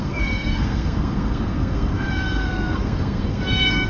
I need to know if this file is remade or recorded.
remade